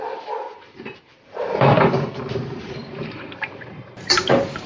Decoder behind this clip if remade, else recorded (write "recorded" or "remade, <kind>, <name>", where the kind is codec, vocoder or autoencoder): remade, vocoder, BigVGAN v2